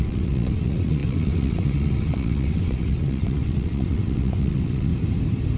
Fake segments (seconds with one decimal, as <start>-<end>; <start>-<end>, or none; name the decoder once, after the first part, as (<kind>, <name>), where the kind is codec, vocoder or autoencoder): 0.0-4.9 (vocoder, WaveNeXt)